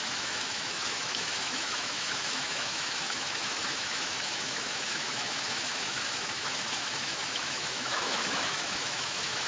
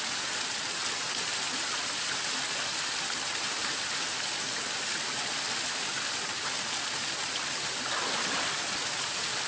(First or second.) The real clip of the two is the second